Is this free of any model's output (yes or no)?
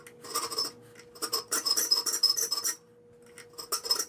yes